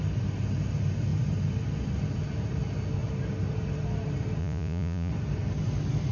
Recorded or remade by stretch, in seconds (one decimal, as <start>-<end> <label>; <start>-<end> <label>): 0.0-4.4 recorded; 4.4-5.1 remade; 5.1-6.1 recorded